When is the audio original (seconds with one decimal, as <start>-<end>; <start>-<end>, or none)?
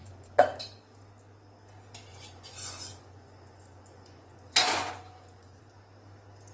0.6-2.1; 5.6-6.5